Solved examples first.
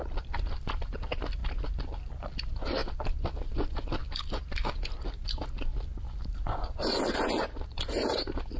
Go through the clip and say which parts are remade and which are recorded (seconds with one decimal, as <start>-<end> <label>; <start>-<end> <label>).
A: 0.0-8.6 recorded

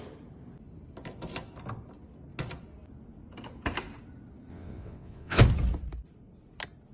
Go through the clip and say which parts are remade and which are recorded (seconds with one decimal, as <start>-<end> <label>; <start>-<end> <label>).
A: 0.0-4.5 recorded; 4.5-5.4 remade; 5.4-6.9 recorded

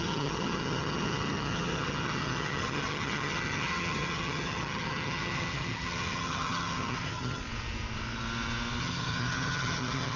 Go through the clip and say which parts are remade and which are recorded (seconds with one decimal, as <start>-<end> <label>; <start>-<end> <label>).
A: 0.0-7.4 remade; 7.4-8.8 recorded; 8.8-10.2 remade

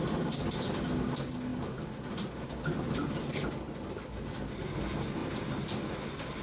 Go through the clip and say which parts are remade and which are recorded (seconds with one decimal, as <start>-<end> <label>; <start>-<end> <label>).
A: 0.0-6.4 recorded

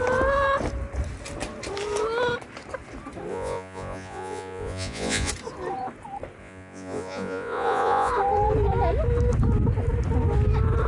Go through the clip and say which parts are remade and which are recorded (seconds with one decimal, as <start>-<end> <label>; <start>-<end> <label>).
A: 0.0-3.3 recorded; 3.3-5.3 remade; 5.3-6.4 recorded; 6.4-8.1 remade; 8.1-10.9 recorded

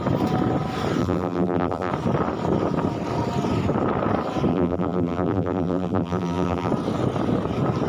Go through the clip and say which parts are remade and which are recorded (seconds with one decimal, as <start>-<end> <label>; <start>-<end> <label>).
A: 0.0-1.0 recorded; 1.0-1.9 remade; 1.9-4.5 recorded; 4.5-6.7 remade; 6.7-7.9 recorded

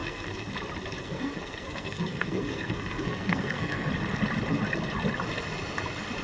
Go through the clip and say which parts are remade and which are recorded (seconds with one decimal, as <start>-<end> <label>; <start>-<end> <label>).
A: 0.0-0.5 remade; 0.5-1.0 recorded; 1.0-3.9 remade; 3.9-6.2 recorded